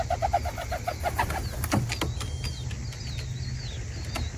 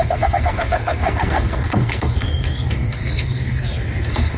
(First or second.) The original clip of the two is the first